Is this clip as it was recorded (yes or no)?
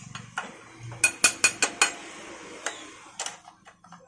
yes